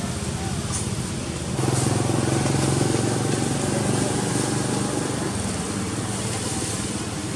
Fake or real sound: real